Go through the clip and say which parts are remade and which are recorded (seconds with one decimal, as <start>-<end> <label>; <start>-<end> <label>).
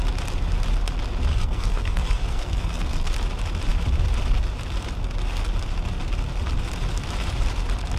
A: 0.0-1.3 recorded; 1.3-3.1 remade; 3.1-8.0 recorded